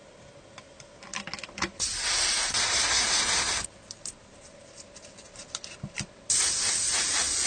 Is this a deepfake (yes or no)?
no